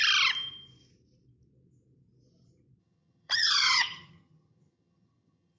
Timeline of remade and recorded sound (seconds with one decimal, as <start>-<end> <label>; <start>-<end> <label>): 0.0-2.8 recorded; 2.8-5.6 remade